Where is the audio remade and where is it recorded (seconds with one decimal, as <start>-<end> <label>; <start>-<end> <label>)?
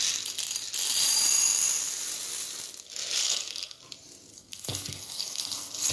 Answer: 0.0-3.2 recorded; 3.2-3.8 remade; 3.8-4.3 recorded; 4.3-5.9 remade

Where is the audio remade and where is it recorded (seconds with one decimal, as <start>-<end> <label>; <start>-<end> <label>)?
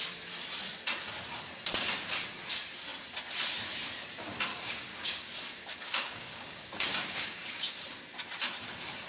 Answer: 0.0-4.5 recorded; 4.5-7.7 remade; 7.7-9.1 recorded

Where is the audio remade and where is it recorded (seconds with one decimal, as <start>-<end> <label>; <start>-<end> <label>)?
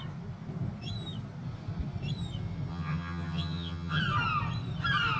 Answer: 0.0-2.7 recorded; 2.7-4.0 remade; 4.0-5.2 recorded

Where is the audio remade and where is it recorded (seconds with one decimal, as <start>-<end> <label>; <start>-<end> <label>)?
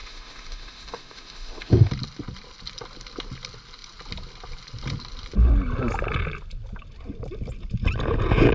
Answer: 0.0-1.9 remade; 1.9-8.5 recorded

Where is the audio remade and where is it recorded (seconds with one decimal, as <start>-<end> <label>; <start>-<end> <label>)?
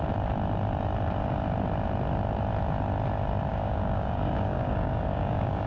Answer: 0.0-3.5 recorded; 3.5-5.7 remade